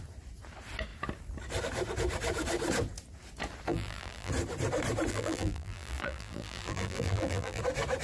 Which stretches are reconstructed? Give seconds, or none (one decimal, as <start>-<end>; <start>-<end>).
3.7-4.3; 5.1-7.6